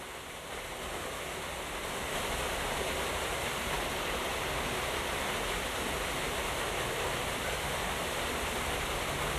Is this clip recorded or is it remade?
recorded